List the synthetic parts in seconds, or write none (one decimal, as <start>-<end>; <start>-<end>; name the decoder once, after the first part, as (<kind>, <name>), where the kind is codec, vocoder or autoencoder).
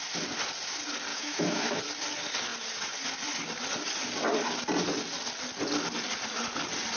1.1-1.8 (autoencoder, DAC-VAE)